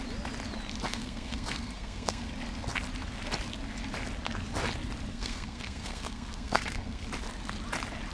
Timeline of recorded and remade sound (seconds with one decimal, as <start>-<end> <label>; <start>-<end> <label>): 0.0-0.9 recorded; 0.9-2.3 remade; 2.3-5.1 recorded; 5.1-7.0 remade; 7.0-8.1 recorded

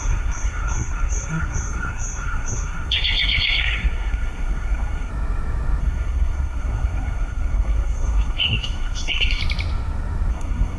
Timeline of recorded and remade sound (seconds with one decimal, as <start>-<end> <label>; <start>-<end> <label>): 0.0-5.1 remade; 5.1-5.8 recorded; 5.8-9.4 remade; 9.4-10.3 recorded; 10.3-10.8 remade

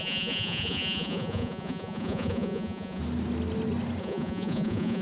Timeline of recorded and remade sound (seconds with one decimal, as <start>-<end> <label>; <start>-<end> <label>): 0.0-3.0 remade; 3.0-4.0 recorded; 4.0-5.0 remade

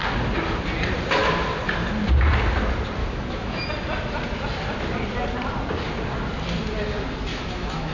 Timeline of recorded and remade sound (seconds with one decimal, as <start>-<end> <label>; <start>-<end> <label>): 0.0-3.0 recorded; 3.0-3.7 remade; 3.7-7.3 recorded; 7.3-7.9 remade